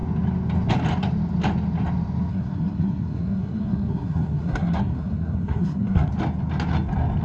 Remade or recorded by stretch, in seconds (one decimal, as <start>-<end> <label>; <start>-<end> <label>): 0.0-2.3 recorded; 2.3-6.1 remade; 6.1-7.2 recorded